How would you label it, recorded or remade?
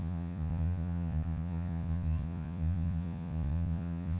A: remade